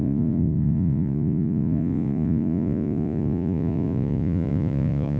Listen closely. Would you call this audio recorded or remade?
remade